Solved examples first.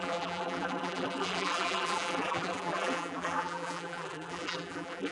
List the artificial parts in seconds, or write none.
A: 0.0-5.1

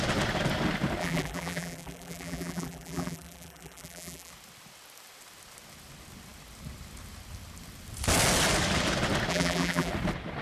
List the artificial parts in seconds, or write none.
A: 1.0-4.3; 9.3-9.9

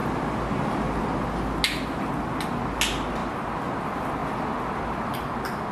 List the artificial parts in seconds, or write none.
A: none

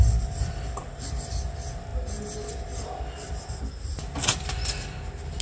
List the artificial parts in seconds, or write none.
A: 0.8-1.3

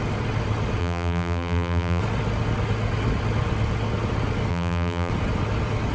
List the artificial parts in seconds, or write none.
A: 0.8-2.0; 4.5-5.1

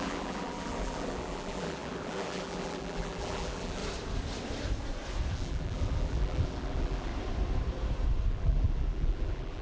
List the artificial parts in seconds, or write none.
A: 0.0-3.8; 5.3-7.1; 8.3-9.6